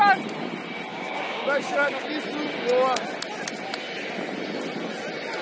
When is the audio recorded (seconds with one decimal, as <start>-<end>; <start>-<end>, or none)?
0.0-0.9; 2.1-5.4